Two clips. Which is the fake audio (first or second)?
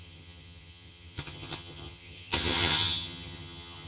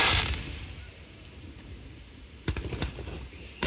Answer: first